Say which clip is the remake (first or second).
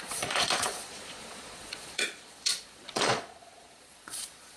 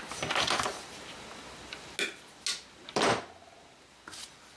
first